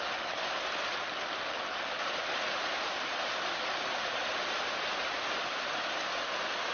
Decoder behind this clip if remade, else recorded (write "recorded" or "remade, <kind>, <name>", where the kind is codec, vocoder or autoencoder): recorded